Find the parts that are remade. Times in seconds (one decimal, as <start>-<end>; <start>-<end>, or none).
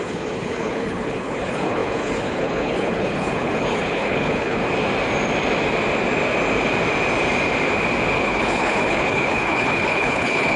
0.0-4.6; 8.2-10.6